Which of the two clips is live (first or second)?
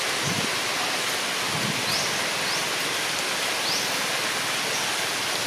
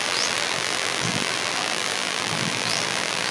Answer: first